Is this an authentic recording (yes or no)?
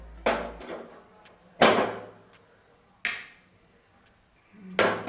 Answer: yes